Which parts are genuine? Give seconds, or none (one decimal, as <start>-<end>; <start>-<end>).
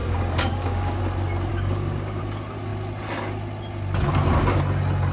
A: 1.0-1.5; 2.2-5.1